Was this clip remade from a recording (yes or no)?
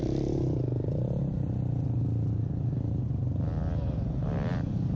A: no